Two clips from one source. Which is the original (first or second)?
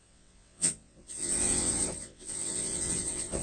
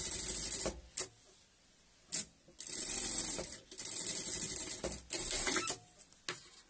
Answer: second